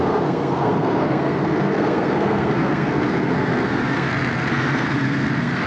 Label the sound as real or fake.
fake